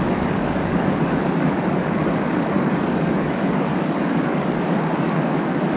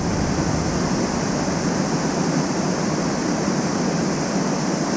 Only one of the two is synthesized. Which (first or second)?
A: first